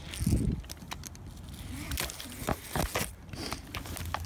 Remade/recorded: recorded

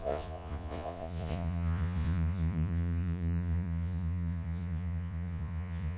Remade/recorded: remade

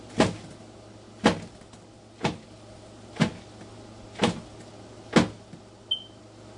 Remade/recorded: recorded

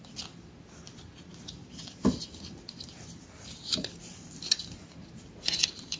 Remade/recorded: remade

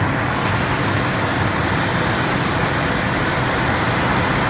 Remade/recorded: recorded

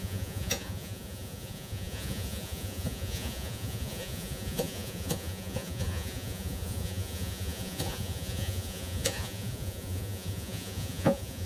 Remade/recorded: remade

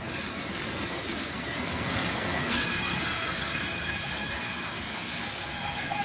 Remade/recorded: remade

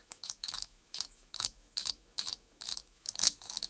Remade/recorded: remade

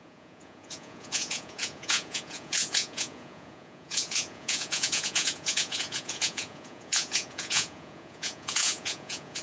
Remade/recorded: remade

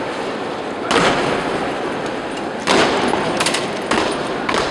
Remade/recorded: recorded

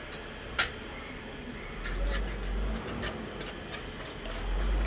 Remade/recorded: recorded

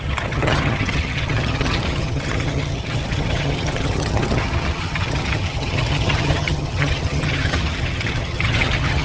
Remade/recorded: remade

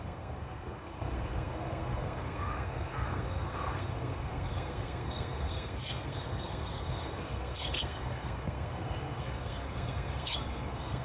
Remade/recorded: remade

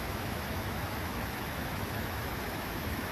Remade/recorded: remade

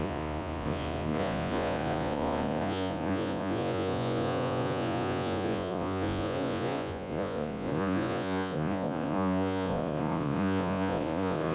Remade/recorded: remade